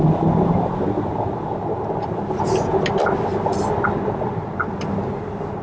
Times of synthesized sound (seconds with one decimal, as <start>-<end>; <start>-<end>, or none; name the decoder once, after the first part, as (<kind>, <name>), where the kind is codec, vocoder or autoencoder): none